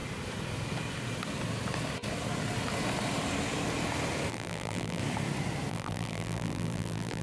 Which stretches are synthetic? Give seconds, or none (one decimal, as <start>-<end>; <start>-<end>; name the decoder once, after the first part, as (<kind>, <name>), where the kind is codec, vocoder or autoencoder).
4.3-5.0 (vocoder, BigVGAN v2); 5.7-7.2